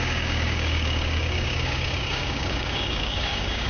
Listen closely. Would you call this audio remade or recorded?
remade